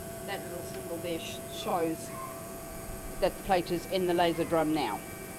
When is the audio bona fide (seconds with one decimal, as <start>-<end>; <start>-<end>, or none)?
none